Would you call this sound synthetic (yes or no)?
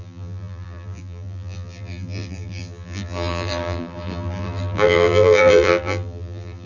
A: yes